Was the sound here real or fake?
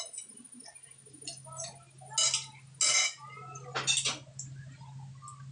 real